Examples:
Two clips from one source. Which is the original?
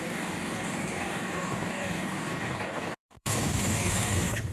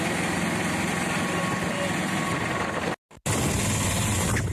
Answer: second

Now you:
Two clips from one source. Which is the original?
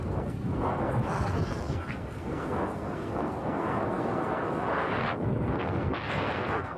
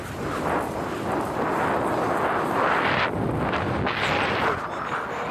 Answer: second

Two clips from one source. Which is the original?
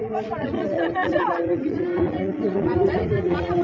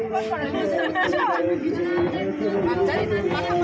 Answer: second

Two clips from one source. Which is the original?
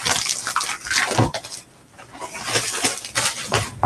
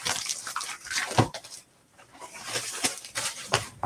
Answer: first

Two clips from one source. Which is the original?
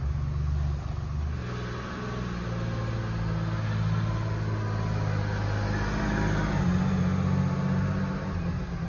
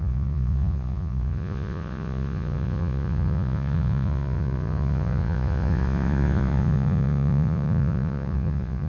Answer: first